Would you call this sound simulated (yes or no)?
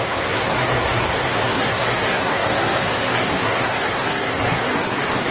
yes